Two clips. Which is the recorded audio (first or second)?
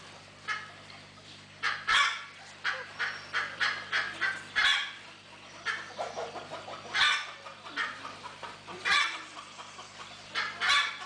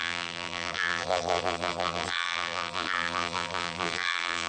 first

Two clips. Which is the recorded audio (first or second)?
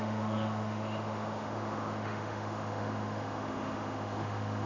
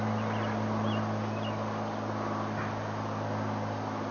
second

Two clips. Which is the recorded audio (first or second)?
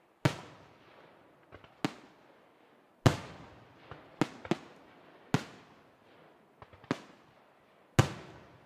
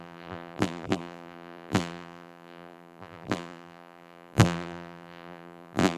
first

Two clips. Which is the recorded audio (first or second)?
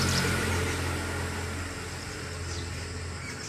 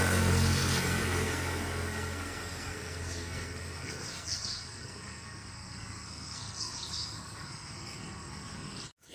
first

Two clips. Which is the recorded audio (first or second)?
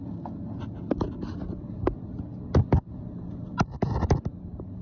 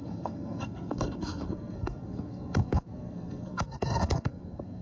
first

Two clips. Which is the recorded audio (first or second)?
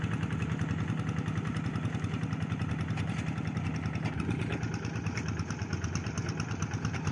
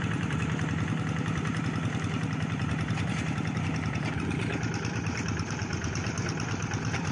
first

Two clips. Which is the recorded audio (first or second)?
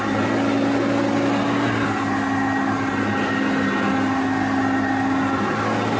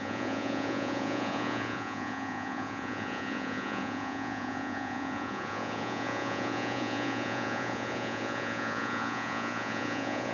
first